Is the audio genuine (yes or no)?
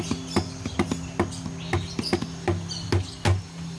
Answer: yes